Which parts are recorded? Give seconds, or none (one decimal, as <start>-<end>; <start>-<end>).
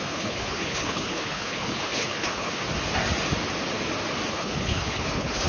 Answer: 2.6-4.3